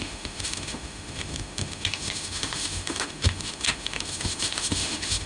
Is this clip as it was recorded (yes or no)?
no